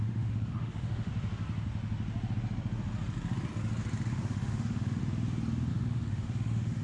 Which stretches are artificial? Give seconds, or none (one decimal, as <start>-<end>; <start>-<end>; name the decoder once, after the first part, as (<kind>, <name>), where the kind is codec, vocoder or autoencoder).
0.0-1.1 (autoencoder, DAC-VAE); 4.1-5.0; 5.7-6.8